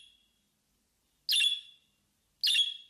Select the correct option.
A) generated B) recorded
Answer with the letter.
B